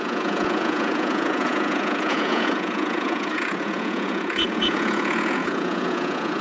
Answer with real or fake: fake